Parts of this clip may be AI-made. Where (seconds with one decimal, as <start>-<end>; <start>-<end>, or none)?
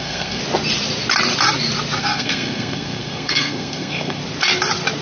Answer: 0.0-0.4; 2.0-4.2